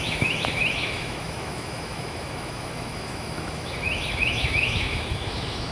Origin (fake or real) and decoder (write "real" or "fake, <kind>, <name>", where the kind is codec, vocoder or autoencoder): fake, autoencoder, DAC-VAE